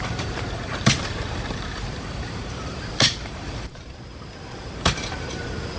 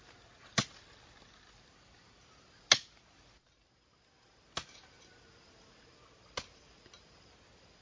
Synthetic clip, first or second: first